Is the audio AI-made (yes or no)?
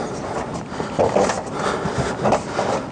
no